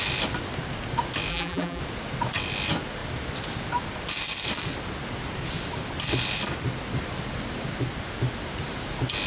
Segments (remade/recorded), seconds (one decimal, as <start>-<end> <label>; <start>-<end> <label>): 0.0-1.3 recorded; 1.3-1.8 remade; 1.8-9.3 recorded

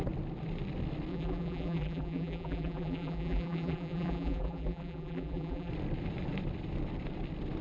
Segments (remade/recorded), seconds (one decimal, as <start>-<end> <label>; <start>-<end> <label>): 0.0-1.1 recorded; 1.1-5.7 remade; 5.7-7.6 recorded

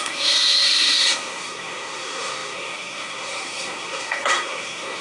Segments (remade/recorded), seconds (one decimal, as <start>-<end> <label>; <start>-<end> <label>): 0.0-5.0 remade

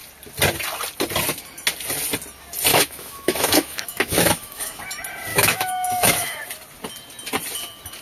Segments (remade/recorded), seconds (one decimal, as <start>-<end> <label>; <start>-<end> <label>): 0.0-2.7 recorded; 2.7-4.8 remade; 4.8-5.3 recorded; 5.3-6.4 remade; 6.4-8.0 recorded

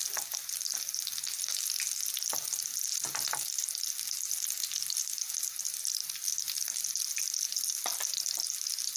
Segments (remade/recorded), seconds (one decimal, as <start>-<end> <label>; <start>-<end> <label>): 0.0-9.0 recorded

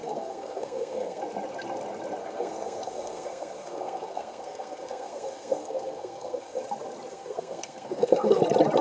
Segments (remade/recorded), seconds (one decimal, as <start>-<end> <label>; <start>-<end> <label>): 0.0-1.2 remade; 1.2-2.2 recorded; 2.2-6.6 remade; 6.6-7.1 recorded; 7.1-8.4 remade; 8.4-8.8 recorded